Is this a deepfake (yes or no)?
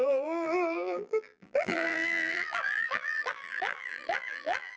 yes